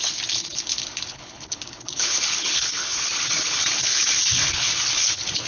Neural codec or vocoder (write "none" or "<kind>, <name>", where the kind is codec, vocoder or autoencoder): codec, HILCodec